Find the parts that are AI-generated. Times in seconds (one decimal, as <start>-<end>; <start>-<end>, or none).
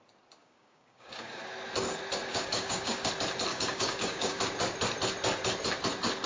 0.4-1.4; 2.3-3.1; 3.5-4.4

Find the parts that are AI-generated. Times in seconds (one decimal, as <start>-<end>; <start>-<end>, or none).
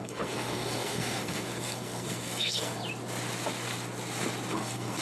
0.0-2.8; 4.5-5.0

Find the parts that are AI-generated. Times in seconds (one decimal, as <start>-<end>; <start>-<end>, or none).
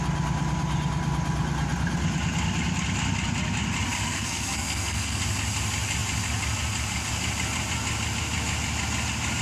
4.0-5.2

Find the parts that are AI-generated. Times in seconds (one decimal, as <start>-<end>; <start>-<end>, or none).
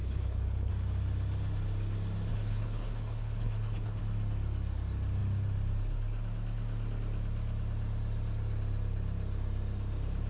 0.0-0.7; 2.3-4.0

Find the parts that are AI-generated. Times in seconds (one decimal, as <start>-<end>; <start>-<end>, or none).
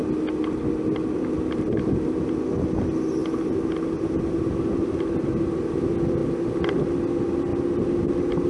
none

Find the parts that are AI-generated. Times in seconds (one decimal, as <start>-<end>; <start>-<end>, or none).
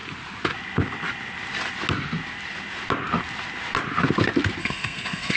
4.6-5.4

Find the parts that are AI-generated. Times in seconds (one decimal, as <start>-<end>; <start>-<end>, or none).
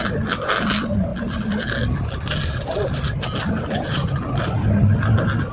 none